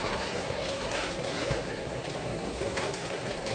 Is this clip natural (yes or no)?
no